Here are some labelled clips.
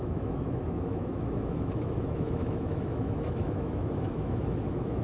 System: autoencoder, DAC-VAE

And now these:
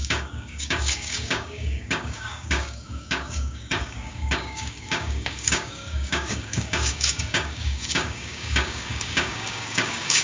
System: codec, DAC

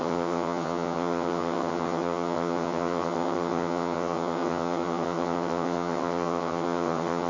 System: vocoder, HiFi-GAN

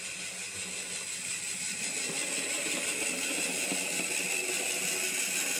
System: none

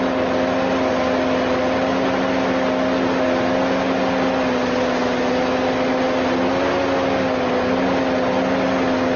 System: none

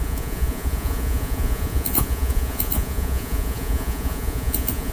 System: vocoder, Vocos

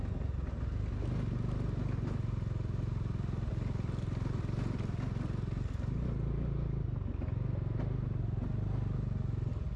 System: none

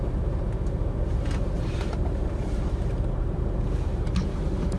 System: vocoder, BigVGAN v2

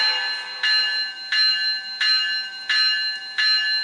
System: none